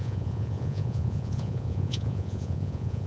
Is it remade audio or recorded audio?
remade